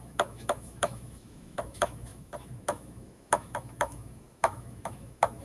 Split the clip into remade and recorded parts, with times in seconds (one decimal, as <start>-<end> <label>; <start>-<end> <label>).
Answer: 0.0-5.4 remade